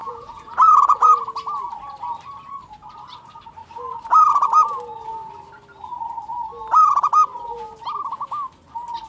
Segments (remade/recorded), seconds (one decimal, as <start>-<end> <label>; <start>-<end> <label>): 0.0-1.2 remade; 1.2-9.1 recorded